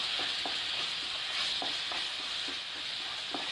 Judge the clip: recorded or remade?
remade